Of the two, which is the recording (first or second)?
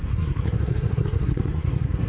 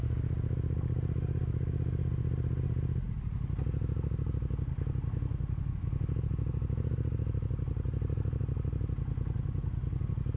second